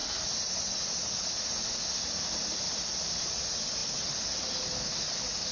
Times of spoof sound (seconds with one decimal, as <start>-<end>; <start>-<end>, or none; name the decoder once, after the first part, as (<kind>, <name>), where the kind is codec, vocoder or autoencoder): none